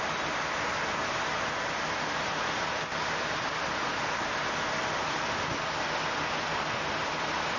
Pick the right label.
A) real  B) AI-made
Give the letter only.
A